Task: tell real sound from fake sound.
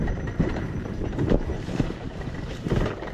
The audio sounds fake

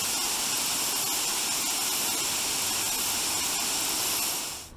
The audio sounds real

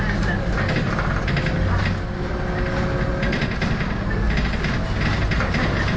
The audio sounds real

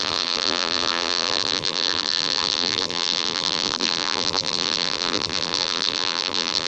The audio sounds fake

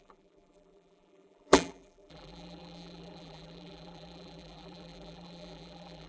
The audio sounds fake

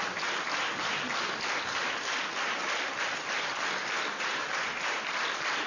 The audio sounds fake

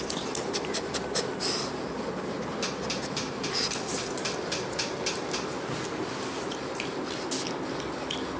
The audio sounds real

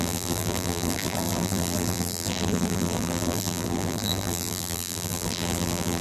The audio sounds fake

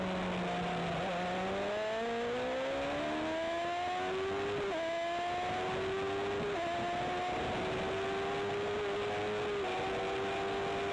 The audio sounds real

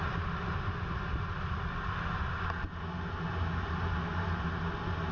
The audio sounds real